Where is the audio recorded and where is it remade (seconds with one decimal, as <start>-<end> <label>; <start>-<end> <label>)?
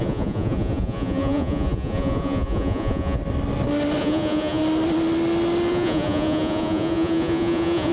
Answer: 0.0-3.2 remade; 3.2-4.0 recorded; 4.0-4.6 remade; 4.6-5.7 recorded; 5.7-7.9 remade